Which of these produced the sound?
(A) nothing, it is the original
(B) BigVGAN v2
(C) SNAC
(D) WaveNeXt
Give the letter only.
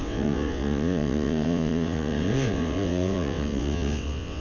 D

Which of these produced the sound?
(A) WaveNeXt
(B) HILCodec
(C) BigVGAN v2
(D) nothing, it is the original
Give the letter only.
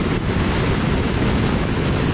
D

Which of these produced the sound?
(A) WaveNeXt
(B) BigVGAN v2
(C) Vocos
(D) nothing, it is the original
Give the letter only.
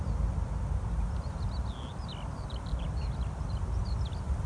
D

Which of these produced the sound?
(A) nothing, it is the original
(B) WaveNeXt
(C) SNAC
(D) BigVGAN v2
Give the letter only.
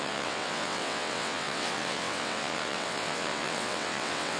B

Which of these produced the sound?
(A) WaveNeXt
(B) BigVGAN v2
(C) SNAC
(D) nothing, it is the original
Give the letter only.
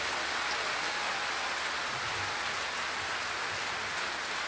D